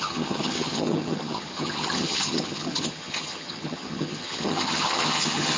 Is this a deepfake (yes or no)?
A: yes